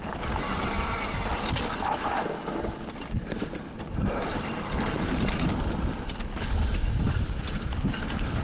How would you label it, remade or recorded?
recorded